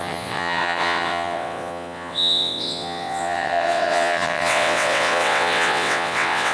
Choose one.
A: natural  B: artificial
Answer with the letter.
B